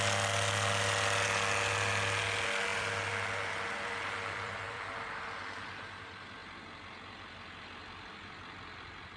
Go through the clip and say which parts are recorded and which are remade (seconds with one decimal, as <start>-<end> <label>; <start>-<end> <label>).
0.0-2.7 recorded; 2.7-5.3 remade; 5.3-9.2 recorded